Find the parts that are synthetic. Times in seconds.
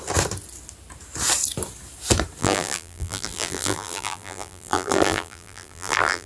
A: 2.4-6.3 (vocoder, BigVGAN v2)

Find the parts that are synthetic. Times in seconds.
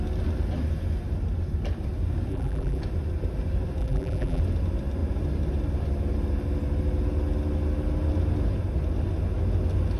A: 2.3-2.8 (vocoder, BigVGAN v2); 3.8-4.4